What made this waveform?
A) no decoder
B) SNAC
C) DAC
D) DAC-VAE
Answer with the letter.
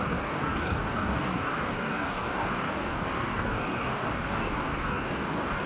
C